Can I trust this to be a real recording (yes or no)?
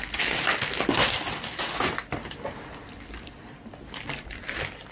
yes